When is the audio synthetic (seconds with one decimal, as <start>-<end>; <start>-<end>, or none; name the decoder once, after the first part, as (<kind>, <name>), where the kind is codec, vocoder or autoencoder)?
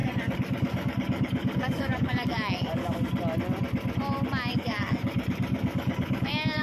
0.0-2.8 (codec, DAC); 4.5-6.6